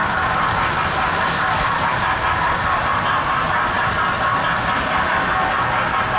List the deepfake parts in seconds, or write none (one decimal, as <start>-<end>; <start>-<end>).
none